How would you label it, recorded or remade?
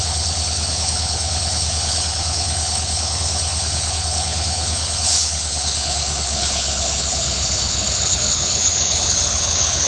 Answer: remade